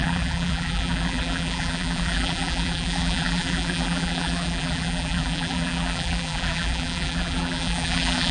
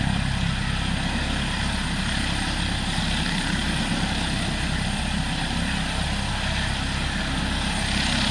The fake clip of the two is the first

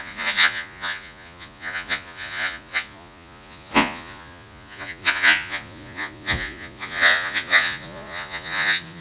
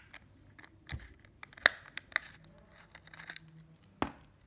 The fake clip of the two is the first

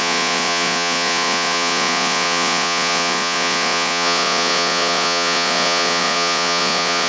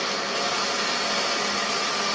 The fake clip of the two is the first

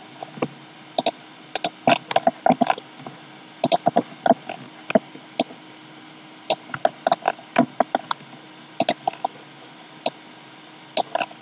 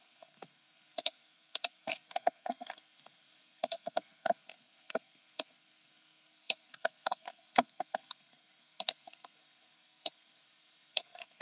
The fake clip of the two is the second